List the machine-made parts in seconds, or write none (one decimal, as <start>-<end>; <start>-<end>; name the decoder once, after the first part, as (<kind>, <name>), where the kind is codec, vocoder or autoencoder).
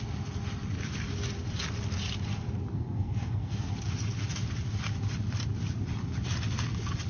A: 2.7-3.7 (codec, SNAC)